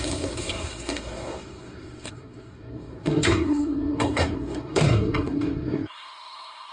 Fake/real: fake